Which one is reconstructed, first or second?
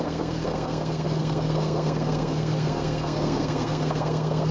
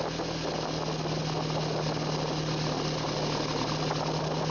first